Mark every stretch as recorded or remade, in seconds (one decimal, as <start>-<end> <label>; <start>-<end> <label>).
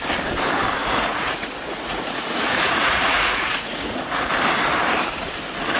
0.0-0.8 recorded; 0.8-4.3 remade; 4.3-5.8 recorded